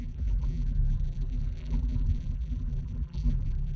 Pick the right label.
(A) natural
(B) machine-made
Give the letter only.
B